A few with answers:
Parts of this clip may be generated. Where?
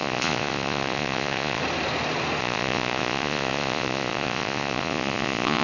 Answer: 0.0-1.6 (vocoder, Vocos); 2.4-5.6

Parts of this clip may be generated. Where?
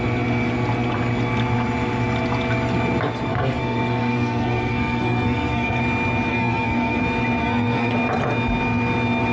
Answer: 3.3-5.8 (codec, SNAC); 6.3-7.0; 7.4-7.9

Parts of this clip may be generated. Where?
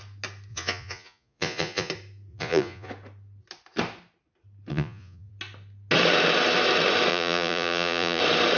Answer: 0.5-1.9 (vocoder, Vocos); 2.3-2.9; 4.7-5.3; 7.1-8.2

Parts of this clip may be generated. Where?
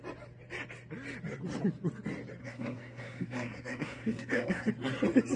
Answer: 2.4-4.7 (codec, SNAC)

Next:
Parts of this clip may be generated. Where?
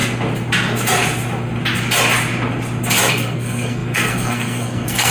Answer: 3.1-5.1 (codec, SNAC)